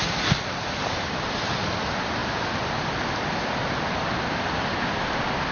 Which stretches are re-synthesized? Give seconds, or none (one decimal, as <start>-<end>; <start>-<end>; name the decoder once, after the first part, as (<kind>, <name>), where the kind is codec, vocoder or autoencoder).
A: none